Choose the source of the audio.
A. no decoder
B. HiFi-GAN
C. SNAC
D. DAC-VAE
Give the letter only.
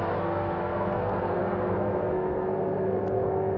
C